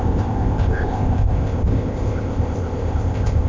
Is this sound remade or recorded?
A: remade